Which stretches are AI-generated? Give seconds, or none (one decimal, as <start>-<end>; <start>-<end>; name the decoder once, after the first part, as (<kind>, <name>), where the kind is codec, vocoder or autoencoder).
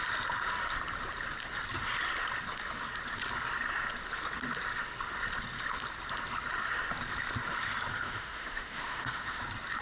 7.9-9.4 (autoencoder, DAC-VAE)